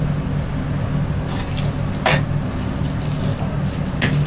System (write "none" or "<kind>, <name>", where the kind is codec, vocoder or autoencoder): none